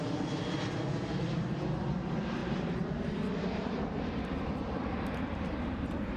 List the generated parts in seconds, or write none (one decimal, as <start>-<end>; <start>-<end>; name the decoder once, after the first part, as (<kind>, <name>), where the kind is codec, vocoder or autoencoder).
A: 2.4-6.2 (vocoder, BigVGAN v2)